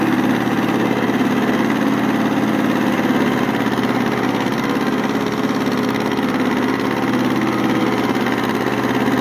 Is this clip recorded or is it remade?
recorded